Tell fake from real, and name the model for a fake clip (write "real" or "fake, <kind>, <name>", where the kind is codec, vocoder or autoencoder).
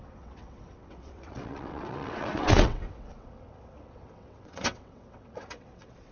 fake, vocoder, WaveNeXt